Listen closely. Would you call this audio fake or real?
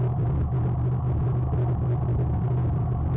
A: real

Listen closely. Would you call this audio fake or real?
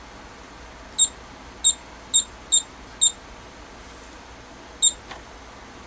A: real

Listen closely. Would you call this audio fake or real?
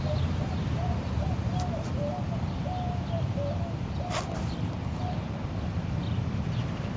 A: real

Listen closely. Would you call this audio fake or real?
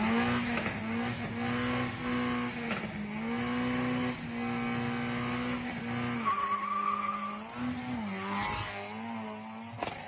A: real